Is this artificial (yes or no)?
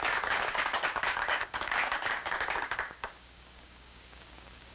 yes